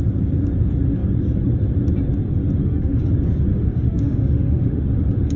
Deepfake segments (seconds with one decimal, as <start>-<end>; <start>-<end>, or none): 2.6-3.1; 3.5-4.8